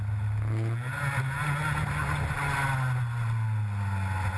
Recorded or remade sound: recorded